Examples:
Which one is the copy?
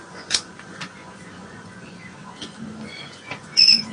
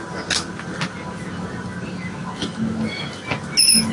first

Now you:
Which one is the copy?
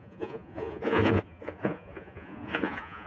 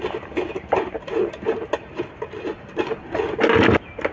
first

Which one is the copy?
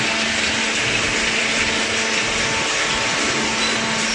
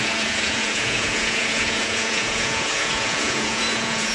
second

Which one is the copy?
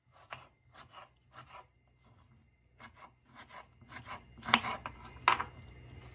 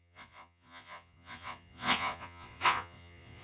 second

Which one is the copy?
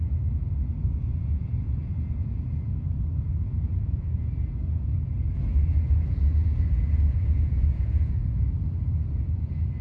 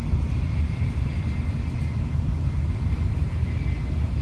first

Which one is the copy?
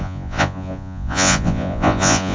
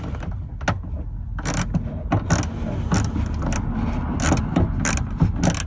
first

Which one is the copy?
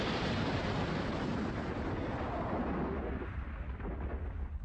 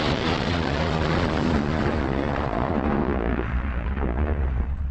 second